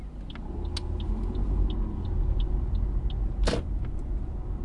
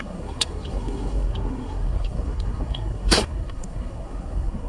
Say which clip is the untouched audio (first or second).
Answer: first